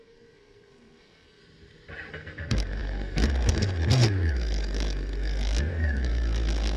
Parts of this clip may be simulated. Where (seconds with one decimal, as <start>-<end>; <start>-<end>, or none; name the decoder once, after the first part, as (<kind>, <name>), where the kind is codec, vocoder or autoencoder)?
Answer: 0.0-1.4 (codec, SNAC); 2.1-6.8